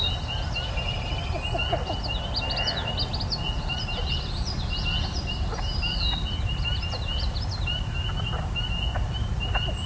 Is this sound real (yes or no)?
yes